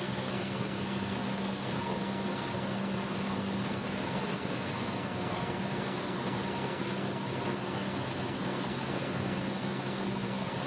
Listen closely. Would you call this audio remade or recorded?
remade